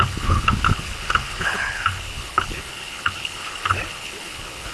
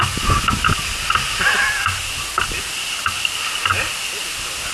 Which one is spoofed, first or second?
first